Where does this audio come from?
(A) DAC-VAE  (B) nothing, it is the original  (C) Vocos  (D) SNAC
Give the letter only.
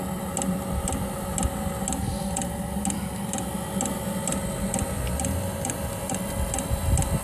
B